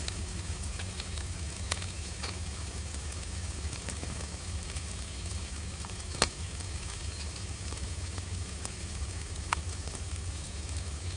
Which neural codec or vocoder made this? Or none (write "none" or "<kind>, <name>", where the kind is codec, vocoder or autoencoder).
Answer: autoencoder, DAC-VAE